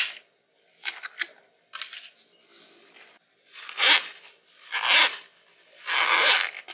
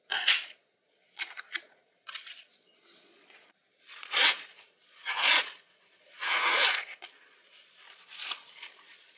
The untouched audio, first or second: first